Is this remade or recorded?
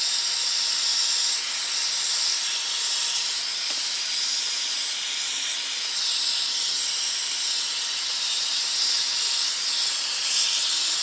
recorded